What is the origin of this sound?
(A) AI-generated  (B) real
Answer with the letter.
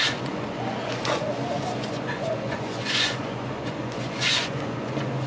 A